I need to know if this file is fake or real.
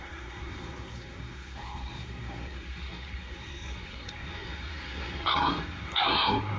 fake